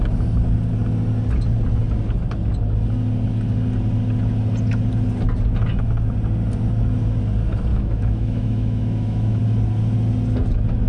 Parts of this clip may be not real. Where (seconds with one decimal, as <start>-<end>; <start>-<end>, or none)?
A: 7.7-9.4